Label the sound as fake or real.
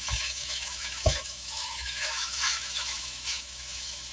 fake